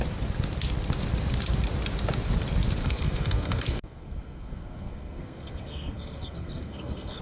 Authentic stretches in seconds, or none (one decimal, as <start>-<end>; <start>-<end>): 0.0-2.8